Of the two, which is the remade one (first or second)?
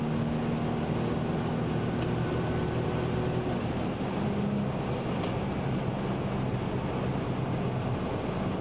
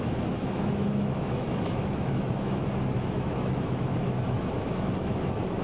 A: second